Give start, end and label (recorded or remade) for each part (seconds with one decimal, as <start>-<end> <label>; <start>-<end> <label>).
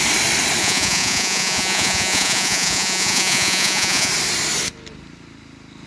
0.0-0.6 recorded; 0.6-4.1 remade; 4.1-5.9 recorded